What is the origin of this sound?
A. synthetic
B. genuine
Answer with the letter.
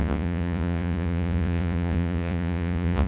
A